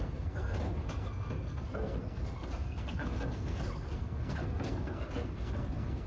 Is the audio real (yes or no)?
no